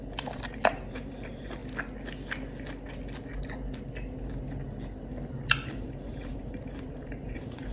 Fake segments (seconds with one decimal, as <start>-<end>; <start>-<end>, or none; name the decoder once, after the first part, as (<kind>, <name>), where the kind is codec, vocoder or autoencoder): 0.0-1.6 (vocoder, BigVGAN v2); 5.8-7.7